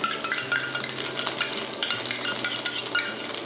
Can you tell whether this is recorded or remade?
recorded